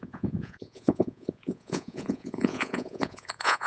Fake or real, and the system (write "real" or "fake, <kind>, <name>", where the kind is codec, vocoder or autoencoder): fake, vocoder, Vocos